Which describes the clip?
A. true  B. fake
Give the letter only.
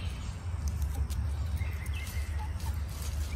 A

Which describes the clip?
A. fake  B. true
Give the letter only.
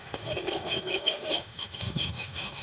A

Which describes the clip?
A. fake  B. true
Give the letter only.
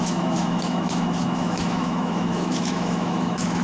A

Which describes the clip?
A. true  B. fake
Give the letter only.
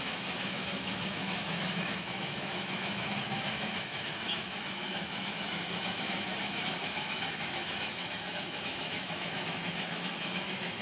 B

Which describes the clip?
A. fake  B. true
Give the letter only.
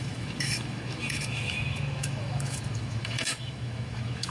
A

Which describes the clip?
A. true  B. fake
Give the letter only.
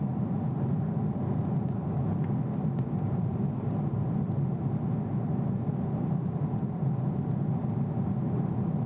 A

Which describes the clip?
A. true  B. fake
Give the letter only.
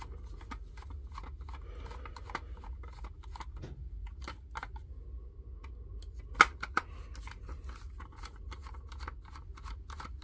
A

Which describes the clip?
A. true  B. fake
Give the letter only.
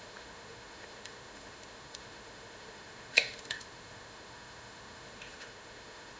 B